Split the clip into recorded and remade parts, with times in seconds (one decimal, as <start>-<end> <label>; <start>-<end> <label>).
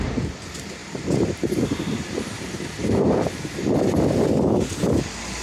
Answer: 0.0-0.8 recorded; 0.8-3.5 remade; 3.5-5.4 recorded